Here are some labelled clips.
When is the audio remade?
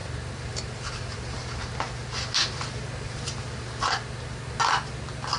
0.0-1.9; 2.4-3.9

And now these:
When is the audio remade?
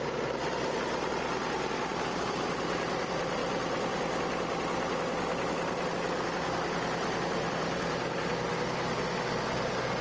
none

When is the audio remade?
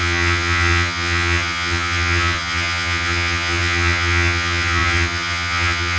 0.0-6.0